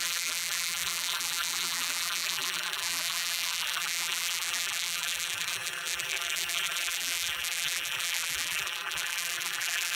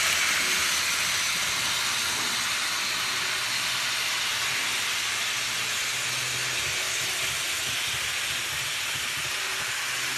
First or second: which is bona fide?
second